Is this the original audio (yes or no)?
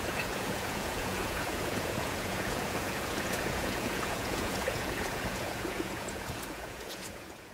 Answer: no